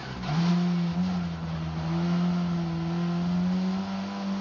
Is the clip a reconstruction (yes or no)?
no